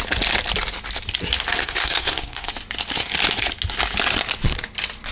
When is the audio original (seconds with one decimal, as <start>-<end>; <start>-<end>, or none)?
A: 0.0-1.6; 2.5-5.1